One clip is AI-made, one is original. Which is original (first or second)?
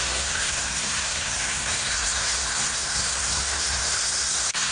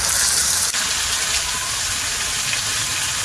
second